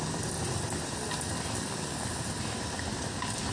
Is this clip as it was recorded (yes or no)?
yes